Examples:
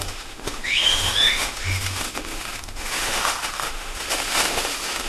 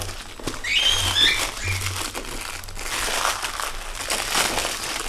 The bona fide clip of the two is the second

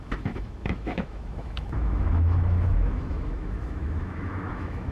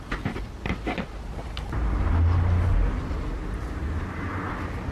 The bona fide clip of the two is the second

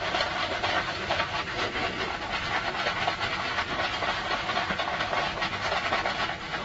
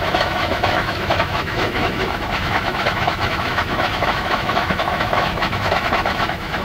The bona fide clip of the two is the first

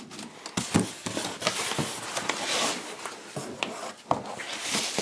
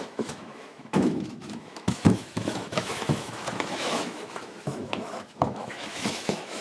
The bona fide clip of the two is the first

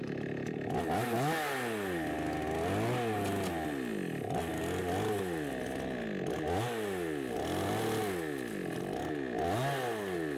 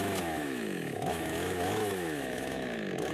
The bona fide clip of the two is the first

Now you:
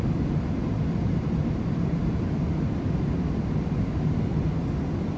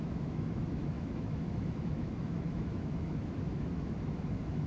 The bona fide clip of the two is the first